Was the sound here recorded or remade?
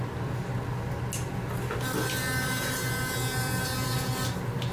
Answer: recorded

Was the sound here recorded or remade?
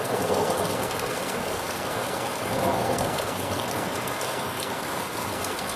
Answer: remade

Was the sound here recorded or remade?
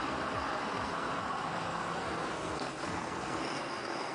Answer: remade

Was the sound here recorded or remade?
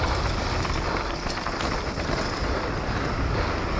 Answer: recorded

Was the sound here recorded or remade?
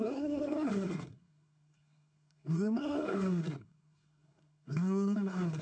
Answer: remade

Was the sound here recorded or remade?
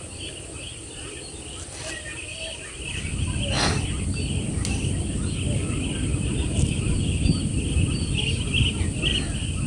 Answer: recorded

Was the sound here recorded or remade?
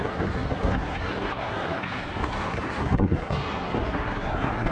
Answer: remade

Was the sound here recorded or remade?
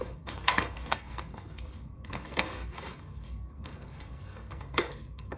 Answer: remade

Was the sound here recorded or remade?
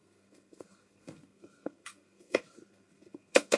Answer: remade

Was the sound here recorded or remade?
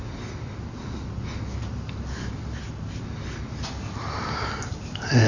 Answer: recorded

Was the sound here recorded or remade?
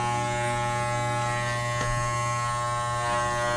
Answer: recorded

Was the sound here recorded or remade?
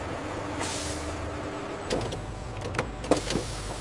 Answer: recorded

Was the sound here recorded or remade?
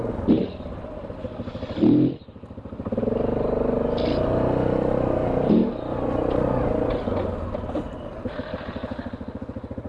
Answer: recorded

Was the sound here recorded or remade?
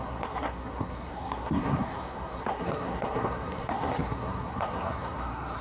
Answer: remade